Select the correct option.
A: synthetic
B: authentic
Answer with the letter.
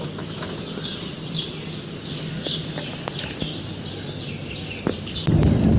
B